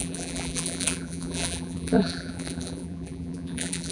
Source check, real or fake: fake